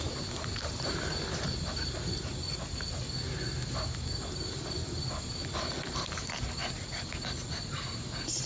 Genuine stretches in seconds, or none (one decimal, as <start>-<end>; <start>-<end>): 2.3-4.7